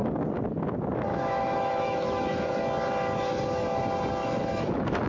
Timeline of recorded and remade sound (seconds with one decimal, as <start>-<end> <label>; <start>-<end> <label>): 0.0-1.1 recorded; 1.1-2.6 remade; 2.6-4.2 recorded; 4.2-5.1 remade